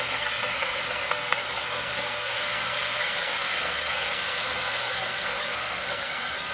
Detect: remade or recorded remade